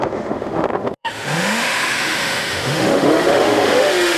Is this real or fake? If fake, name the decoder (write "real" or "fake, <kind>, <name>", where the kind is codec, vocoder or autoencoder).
fake, autoencoder, DAC-VAE